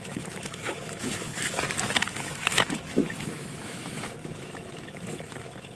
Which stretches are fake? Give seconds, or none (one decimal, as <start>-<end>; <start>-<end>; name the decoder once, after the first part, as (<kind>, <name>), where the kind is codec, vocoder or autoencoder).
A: 0.0-1.3 (autoencoder, DAC-VAE); 2.2-5.8